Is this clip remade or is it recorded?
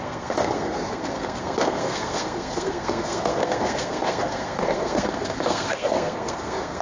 remade